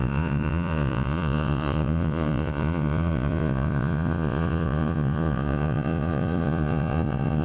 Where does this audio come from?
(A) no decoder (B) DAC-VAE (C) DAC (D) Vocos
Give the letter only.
D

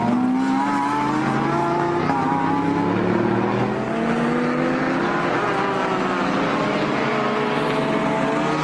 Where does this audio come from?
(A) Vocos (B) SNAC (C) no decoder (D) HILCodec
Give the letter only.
C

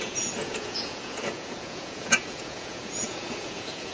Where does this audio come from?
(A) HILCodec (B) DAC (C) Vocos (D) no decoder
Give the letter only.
C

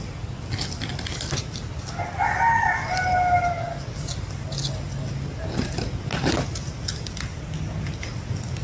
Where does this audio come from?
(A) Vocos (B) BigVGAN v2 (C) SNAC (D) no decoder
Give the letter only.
D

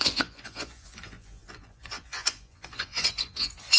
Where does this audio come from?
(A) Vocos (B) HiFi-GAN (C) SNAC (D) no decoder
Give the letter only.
A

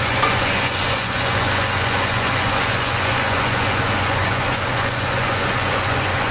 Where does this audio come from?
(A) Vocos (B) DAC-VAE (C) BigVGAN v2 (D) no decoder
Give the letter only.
A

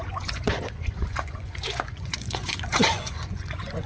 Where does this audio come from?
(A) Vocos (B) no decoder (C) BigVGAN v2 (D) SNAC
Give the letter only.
A